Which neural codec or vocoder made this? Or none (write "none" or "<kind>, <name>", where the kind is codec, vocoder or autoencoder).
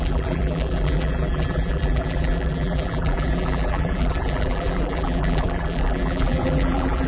vocoder, BigVGAN v2